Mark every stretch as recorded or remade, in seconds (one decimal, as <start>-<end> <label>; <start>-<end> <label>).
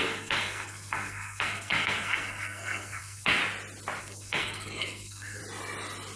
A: 0.0-3.4 remade; 3.4-4.0 recorded; 4.0-5.4 remade; 5.4-6.2 recorded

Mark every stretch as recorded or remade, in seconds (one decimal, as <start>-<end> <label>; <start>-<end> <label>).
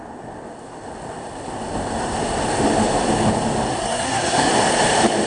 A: 0.0-3.7 recorded; 3.7-4.5 remade; 4.5-5.3 recorded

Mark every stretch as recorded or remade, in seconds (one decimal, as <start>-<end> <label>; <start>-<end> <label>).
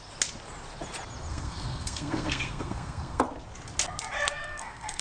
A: 0.0-1.3 recorded; 1.3-3.2 remade; 3.2-4.5 recorded; 4.5-5.0 remade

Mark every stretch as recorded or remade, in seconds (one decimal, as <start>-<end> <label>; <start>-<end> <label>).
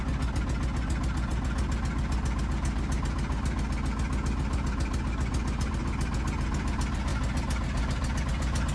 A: 0.0-8.7 recorded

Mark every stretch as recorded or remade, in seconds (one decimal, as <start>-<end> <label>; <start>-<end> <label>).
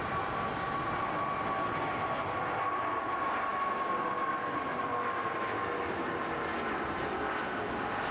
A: 0.0-8.1 recorded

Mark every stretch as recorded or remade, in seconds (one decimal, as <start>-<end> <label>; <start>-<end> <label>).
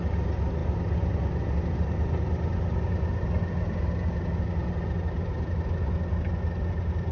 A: 0.0-7.1 recorded